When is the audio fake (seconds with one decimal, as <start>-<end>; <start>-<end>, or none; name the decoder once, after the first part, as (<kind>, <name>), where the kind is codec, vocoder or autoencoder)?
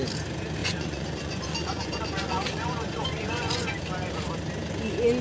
0.6-3.7 (vocoder, Vocos)